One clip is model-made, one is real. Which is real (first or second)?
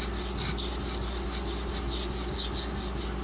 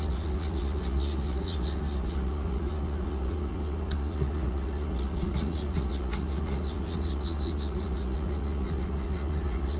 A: first